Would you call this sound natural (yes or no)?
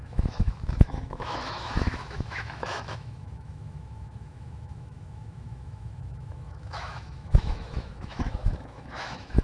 no